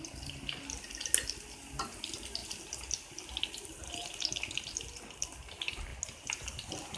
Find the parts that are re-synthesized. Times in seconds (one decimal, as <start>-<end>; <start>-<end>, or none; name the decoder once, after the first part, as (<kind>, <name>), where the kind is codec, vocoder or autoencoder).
none